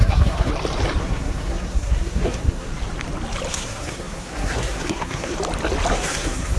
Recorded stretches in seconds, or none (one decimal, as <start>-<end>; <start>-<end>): 0.5-1.0; 2.7-3.5; 5.3-5.9

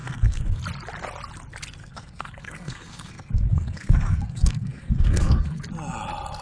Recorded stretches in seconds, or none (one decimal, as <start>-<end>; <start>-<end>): 0.6-1.8; 5.6-6.4

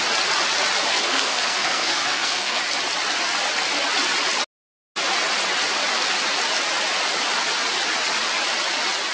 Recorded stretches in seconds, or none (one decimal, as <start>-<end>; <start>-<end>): 0.0-0.9; 2.6-9.1

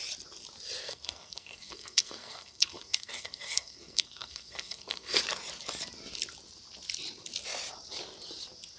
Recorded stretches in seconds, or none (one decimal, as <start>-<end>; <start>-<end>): 0.0-0.8; 5.2-8.8